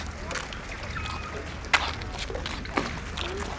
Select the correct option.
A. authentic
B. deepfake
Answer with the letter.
A